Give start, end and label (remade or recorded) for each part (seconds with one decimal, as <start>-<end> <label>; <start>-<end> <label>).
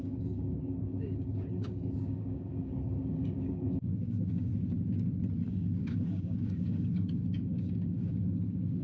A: 0.0-4.5 remade; 4.5-5.5 recorded; 5.5-8.8 remade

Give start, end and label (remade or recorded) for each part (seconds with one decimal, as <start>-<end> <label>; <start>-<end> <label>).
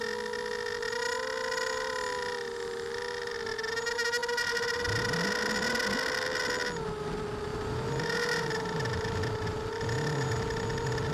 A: 0.0-4.2 recorded; 4.2-4.8 remade; 4.8-7.5 recorded; 7.5-9.2 remade; 9.2-11.1 recorded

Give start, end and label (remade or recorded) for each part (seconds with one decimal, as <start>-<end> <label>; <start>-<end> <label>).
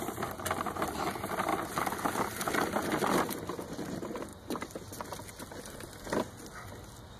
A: 0.0-4.3 recorded; 4.3-5.3 remade; 5.3-7.2 recorded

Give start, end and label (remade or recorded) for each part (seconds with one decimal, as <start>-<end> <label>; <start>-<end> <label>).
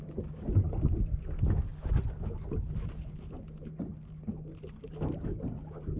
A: 0.0-6.0 recorded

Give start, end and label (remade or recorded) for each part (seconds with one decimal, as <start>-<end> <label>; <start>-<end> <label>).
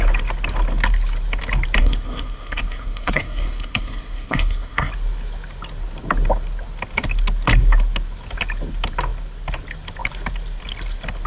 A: 0.0-1.8 recorded; 1.8-4.9 remade; 4.9-11.3 recorded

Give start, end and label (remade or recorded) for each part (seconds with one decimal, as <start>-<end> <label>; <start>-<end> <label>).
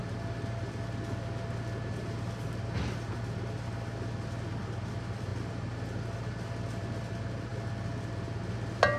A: 0.0-9.0 recorded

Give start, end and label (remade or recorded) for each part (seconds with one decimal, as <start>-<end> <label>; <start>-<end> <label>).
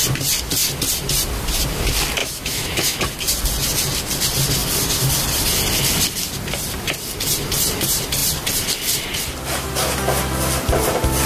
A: 0.0-2.2 recorded; 2.2-3.0 remade; 3.0-11.3 recorded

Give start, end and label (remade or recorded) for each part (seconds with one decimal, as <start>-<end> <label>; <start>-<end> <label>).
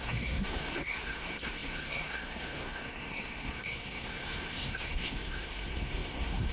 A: 0.0-6.5 remade